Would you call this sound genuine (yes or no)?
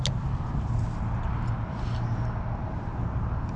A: yes